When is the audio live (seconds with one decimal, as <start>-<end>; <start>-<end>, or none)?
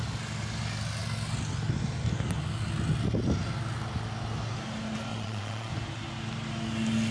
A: 0.0-5.1; 5.7-7.1